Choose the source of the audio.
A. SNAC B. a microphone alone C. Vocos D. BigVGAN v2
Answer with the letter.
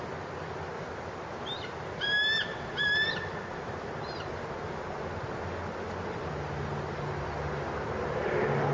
B